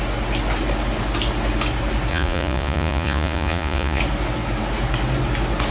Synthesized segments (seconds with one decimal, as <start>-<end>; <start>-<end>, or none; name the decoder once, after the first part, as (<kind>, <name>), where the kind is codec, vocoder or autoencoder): 2.1-4.0 (vocoder, Vocos)